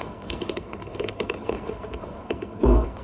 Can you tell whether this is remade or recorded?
remade